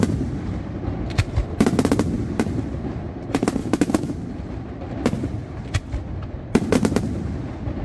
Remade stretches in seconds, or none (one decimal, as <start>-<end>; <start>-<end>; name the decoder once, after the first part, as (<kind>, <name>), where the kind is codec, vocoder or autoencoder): 3.6-4.2 (autoencoder, DAC-VAE)